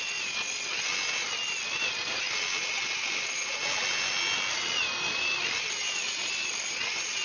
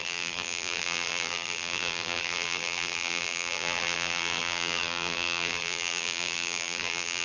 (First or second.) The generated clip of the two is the second